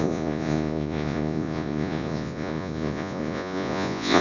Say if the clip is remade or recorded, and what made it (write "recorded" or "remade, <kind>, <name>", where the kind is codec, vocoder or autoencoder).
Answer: remade, vocoder, Vocos